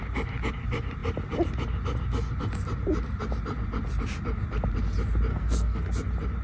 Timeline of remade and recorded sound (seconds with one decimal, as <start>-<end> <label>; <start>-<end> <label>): 0.0-5.3 recorded; 5.3-5.9 remade; 5.9-6.4 recorded